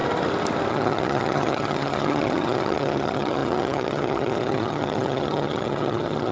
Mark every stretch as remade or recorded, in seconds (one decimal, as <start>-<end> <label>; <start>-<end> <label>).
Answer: 0.0-0.7 recorded; 0.7-6.3 remade

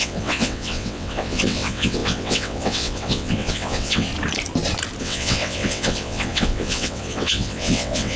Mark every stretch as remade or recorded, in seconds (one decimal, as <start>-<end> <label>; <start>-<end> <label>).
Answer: 0.0-4.1 remade; 4.1-5.0 recorded; 5.0-8.2 remade

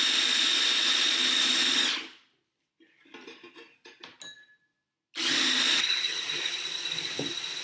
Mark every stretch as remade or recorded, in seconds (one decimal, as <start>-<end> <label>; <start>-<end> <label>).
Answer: 0.0-7.6 recorded

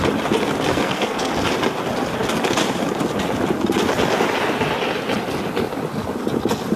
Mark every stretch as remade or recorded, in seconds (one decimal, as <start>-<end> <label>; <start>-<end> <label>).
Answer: 0.0-0.7 recorded; 0.7-1.3 remade; 1.3-6.8 recorded

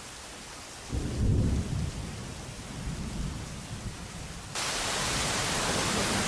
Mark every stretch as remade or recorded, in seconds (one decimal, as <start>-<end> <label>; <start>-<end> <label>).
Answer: 0.0-6.3 recorded